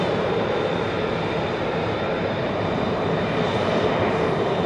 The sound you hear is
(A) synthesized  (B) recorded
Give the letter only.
A